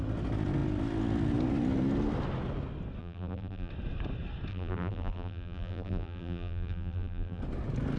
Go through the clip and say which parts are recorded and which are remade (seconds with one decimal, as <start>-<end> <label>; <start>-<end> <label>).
0.0-3.0 recorded; 3.0-3.7 remade; 3.7-4.5 recorded; 4.5-7.4 remade; 7.4-8.0 recorded